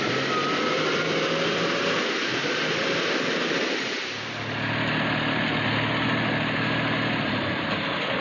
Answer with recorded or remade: recorded